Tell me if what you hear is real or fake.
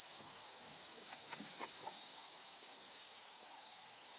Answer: fake